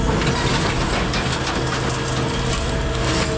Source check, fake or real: real